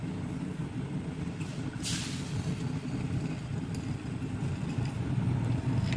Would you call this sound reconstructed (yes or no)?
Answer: no